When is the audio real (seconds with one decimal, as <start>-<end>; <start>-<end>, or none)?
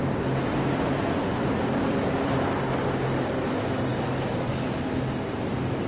3.5-3.9; 4.5-5.9